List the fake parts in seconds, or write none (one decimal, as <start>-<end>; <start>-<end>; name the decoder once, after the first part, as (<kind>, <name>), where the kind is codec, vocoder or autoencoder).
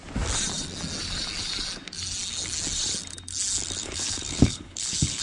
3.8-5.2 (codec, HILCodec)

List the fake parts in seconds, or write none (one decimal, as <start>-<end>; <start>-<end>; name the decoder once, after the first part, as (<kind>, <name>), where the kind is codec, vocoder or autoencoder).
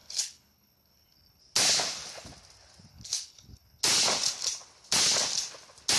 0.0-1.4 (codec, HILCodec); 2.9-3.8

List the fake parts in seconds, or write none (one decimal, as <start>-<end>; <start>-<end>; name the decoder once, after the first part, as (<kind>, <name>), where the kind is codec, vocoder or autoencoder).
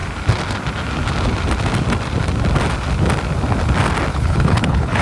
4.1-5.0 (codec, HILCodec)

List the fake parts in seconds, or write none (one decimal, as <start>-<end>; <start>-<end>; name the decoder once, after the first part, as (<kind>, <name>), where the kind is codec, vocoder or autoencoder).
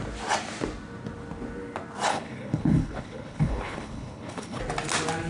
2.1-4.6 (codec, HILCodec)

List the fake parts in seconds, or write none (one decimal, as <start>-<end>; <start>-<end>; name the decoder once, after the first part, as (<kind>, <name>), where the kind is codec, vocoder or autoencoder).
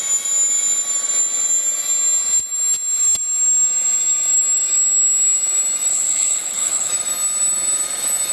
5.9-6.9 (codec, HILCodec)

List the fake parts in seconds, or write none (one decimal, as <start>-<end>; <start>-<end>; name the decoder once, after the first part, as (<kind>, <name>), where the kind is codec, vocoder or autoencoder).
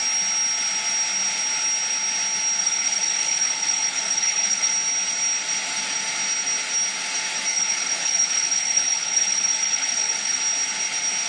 2.6-4.7 (codec, HILCodec); 7.5-10.4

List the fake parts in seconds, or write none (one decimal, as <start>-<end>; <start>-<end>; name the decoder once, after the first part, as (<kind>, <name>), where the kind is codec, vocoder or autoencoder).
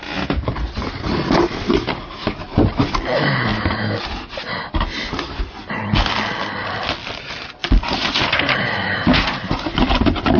none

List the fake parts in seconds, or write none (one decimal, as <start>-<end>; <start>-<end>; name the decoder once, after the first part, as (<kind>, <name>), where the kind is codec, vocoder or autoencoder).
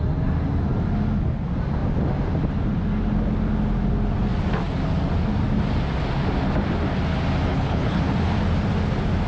7.5-8.0 (codec, HILCodec)